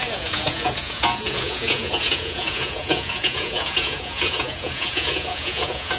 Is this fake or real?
fake